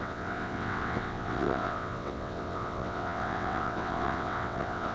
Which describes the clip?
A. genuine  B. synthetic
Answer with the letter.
B